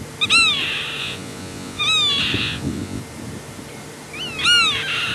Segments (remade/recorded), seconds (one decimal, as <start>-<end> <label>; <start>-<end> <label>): 0.0-1.0 recorded; 1.0-1.8 remade; 1.8-2.4 recorded; 2.4-3.0 remade; 3.0-5.1 recorded